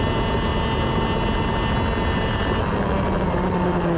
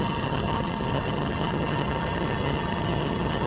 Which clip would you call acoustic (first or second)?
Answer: first